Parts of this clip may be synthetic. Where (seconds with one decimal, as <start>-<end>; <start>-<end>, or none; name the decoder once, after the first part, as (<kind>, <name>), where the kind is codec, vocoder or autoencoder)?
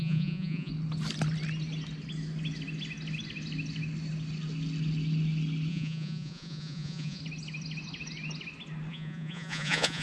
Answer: 0.0-0.7 (vocoder, Vocos); 5.7-7.2; 8.9-10.0